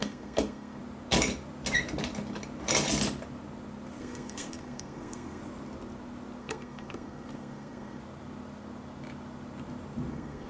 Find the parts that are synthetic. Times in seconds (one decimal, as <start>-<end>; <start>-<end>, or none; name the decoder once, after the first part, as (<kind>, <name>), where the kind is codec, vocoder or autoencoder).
0.0-0.8 (codec, SNAC); 4.0-5.4; 6.4-8.0; 10.1-10.5